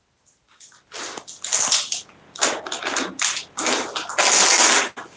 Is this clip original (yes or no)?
yes